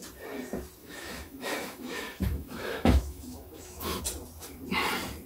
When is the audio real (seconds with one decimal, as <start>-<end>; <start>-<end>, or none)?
0.0-0.8; 4.0-5.3